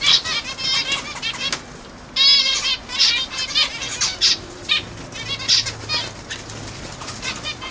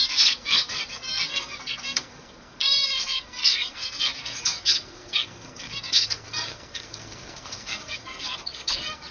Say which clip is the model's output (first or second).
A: second